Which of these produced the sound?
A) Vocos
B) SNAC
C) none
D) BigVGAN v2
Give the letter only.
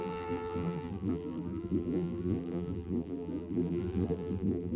D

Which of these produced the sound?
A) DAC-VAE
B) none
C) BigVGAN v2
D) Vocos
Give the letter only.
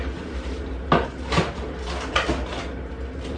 B